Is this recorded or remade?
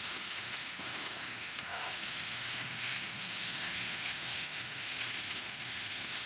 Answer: remade